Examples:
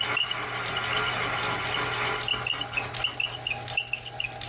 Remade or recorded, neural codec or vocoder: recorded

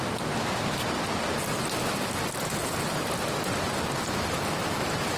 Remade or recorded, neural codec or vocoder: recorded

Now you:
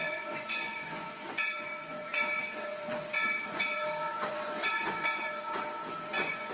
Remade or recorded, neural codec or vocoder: remade, vocoder, Vocos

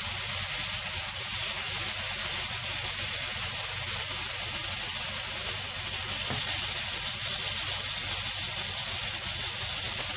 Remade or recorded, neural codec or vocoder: recorded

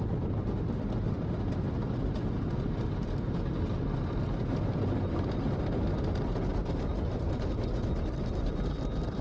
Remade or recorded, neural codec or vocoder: recorded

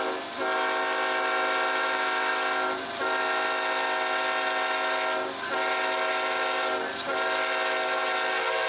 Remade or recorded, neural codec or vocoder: recorded